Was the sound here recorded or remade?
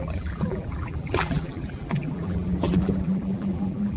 remade